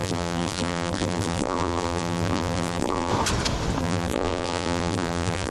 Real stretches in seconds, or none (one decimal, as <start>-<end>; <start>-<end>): 3.1-3.8